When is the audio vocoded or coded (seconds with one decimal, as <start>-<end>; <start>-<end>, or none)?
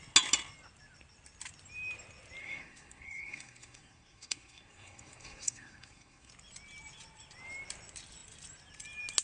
2.4-6.3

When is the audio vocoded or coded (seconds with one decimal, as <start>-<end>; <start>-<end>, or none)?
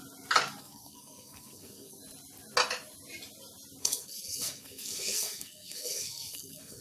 0.6-2.0; 3.8-6.8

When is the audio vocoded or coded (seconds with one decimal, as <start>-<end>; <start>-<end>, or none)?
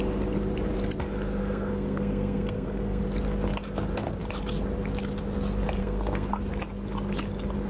1.4-3.0; 5.8-6.4